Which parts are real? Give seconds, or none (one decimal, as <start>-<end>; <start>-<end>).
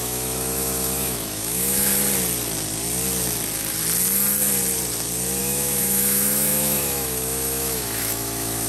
1.9-5.4